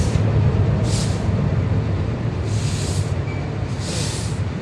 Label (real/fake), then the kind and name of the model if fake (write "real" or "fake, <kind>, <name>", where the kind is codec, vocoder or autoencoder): real